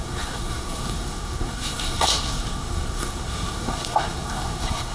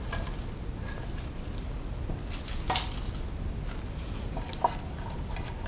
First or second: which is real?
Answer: second